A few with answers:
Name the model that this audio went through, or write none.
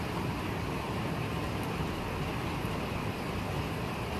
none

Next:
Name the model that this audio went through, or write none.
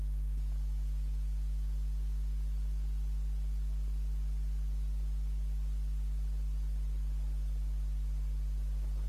none